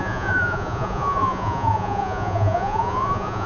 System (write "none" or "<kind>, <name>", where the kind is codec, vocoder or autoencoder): vocoder, Vocos